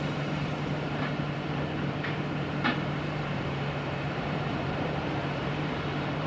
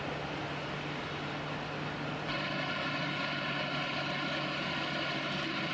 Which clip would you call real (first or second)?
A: second